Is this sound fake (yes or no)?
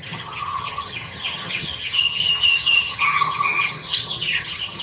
yes